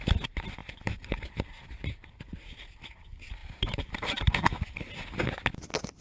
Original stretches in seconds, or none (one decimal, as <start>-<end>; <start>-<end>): 0.0-0.6; 2.2-3.4; 4.6-6.0